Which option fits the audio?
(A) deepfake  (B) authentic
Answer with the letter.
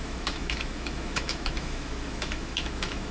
A